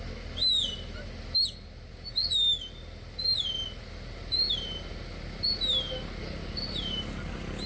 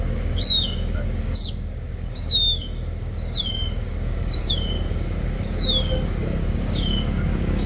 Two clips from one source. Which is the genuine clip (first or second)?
first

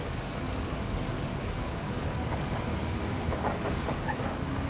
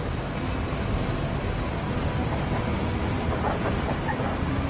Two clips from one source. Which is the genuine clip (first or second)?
second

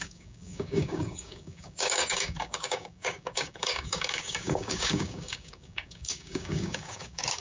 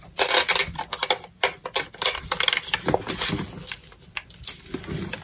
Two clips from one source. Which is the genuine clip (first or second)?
second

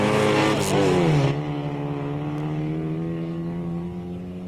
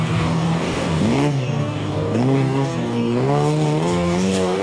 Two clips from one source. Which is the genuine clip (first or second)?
first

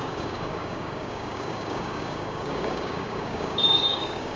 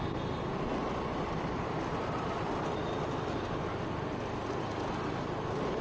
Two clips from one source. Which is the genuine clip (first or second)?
second